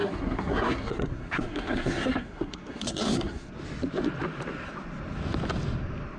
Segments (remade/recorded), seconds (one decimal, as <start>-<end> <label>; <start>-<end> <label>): 0.0-3.5 remade; 3.5-6.2 recorded